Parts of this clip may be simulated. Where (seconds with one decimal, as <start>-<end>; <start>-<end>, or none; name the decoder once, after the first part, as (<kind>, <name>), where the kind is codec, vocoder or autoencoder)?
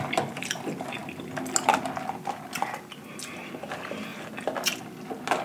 none